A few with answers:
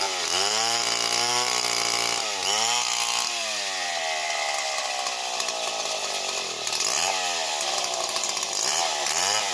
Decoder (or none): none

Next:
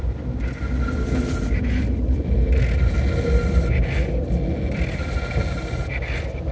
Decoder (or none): none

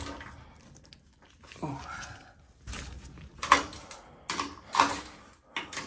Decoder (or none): none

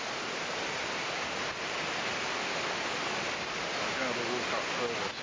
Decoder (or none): none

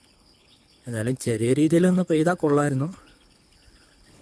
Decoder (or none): codec, HILCodec